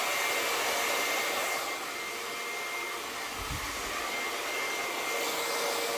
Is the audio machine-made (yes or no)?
no